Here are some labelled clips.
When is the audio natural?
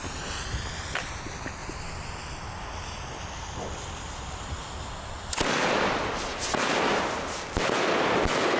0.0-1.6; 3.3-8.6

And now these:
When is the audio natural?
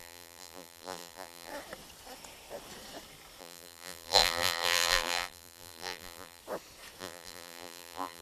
1.5-3.4; 6.4-7.0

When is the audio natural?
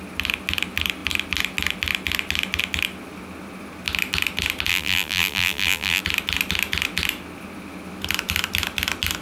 0.0-4.7; 6.0-9.2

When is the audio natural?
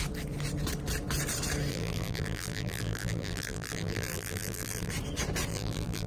0.0-1.7; 4.9-5.5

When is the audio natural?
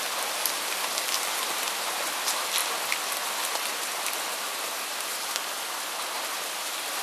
0.0-2.6; 6.2-7.0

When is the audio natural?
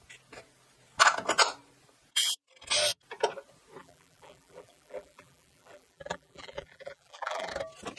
0.0-3.8; 7.5-8.0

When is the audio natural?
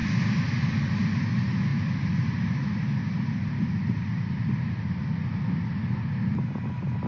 0.8-1.7; 6.0-7.1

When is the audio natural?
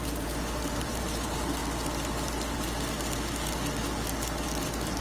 1.6-4.6